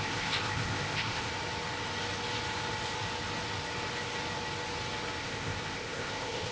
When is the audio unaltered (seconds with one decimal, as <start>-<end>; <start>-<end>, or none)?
1.3-5.2